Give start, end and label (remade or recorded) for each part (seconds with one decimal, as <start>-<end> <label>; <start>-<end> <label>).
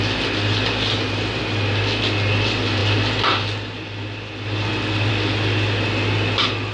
0.0-6.7 recorded